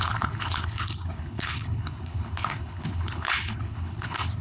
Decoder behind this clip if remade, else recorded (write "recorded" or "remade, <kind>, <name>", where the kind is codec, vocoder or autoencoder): remade, codec, HILCodec